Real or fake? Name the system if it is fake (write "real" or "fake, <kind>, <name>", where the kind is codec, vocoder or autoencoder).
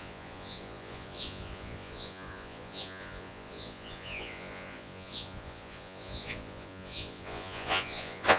fake, vocoder, Vocos